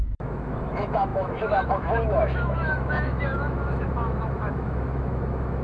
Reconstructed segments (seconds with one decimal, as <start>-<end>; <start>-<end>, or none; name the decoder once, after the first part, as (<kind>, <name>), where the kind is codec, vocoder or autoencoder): 0.0-5.6 (autoencoder, DAC-VAE)